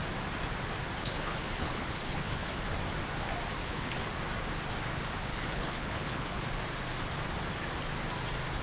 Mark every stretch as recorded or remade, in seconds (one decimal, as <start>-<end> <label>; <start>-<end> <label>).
0.0-1.0 recorded; 1.0-2.5 remade; 2.5-3.6 recorded; 3.6-4.1 remade; 4.1-5.3 recorded; 5.3-6.4 remade; 6.4-8.6 recorded